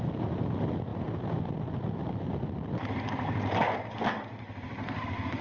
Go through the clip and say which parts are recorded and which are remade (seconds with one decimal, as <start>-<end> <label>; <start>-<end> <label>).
0.0-4.8 recorded; 4.8-5.4 remade